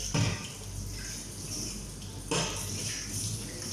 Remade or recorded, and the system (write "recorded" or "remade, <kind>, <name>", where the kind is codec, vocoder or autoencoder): recorded